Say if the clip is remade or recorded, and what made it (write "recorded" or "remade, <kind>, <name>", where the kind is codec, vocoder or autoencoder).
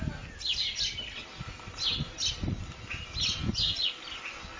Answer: recorded